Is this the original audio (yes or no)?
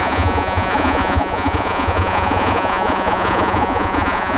no